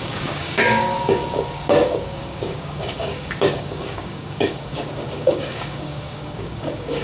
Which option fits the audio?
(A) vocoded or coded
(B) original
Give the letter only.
A